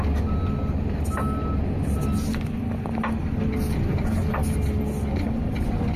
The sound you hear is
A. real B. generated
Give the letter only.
A